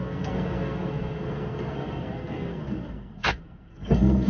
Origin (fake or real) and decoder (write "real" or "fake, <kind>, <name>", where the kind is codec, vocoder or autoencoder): fake, codec, SNAC